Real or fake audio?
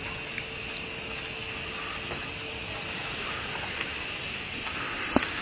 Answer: real